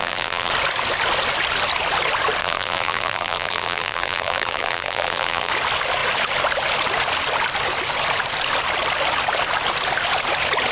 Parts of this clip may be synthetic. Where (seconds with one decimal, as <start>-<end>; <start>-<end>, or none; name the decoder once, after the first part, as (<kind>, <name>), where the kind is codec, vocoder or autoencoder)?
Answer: 0.0-0.5 (vocoder, BigVGAN v2); 2.4-5.5